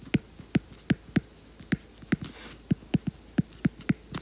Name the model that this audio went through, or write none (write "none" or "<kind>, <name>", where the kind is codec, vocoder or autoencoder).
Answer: none